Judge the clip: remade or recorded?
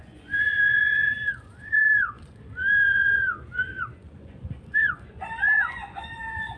remade